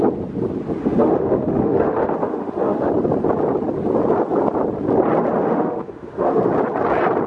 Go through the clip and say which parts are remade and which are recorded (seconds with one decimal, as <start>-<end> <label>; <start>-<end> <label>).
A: 0.0-0.8 recorded; 0.8-2.9 remade; 2.9-5.4 recorded; 5.4-6.4 remade; 6.4-7.3 recorded